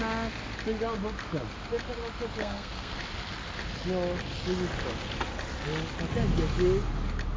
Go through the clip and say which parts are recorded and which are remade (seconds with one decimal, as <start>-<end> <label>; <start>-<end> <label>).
0.0-2.4 recorded; 2.4-3.0 remade; 3.0-7.4 recorded